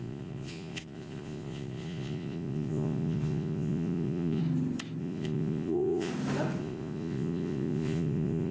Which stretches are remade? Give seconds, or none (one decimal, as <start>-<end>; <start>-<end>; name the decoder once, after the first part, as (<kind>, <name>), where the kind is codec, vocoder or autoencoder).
0.0-4.4 (vocoder, Vocos); 5.0-6.1; 6.6-8.5